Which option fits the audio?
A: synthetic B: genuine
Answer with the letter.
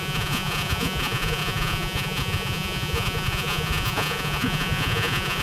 A